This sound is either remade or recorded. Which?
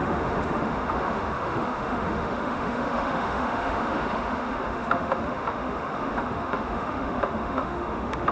remade